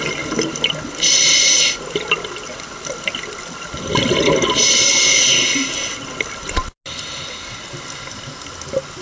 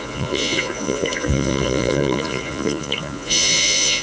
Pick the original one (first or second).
first